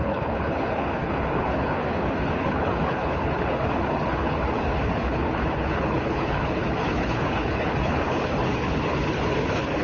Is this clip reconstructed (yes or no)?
yes